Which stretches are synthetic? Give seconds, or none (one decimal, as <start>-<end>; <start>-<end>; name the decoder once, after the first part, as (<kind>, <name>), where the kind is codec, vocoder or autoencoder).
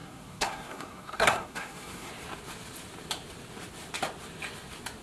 0.0-2.1 (codec, SNAC)